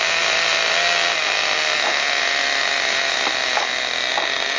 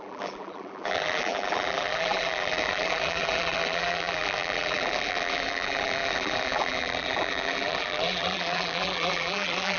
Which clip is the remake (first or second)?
second